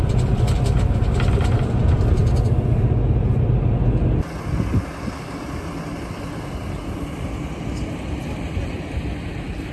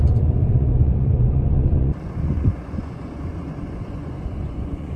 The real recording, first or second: first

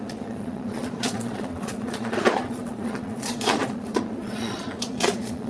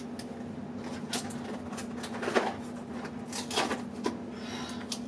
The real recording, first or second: second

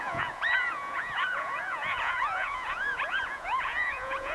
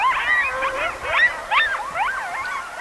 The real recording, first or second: second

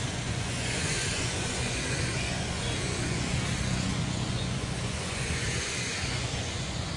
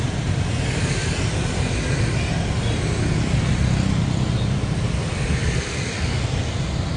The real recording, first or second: second